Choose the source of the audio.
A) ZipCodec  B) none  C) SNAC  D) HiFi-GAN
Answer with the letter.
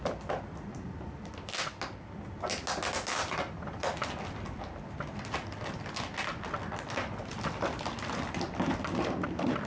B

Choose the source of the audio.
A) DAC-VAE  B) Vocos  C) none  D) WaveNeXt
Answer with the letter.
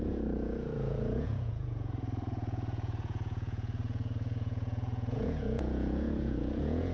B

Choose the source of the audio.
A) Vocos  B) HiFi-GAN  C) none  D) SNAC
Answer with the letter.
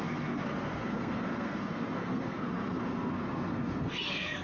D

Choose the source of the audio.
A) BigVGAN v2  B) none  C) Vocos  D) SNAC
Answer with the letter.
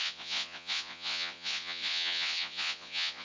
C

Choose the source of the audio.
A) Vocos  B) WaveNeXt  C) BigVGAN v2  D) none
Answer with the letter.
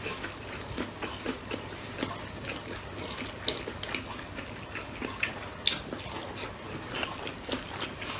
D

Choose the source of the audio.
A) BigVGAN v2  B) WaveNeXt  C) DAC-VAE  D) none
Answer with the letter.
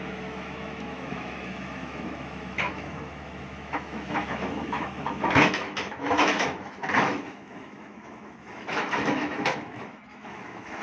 C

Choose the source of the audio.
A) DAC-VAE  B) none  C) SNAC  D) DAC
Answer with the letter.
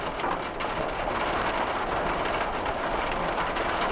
B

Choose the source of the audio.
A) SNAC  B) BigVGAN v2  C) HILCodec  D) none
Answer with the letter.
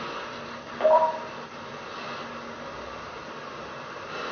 B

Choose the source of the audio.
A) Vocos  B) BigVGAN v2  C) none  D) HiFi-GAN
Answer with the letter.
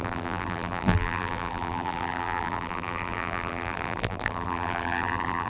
B